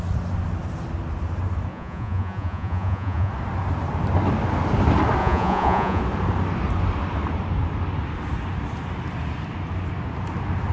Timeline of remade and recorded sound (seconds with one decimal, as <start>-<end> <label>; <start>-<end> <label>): 0.0-1.7 recorded; 1.7-3.3 remade; 3.3-5.2 recorded; 5.2-6.0 remade; 6.0-10.7 recorded